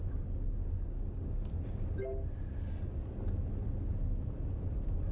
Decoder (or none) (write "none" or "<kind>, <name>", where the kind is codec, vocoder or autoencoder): none